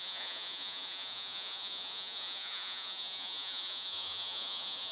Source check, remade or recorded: remade